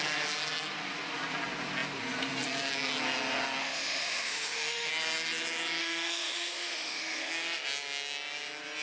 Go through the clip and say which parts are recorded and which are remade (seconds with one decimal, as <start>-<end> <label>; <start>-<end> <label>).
0.0-3.6 recorded; 3.6-4.9 remade; 4.9-5.8 recorded; 5.8-7.3 remade; 7.3-8.8 recorded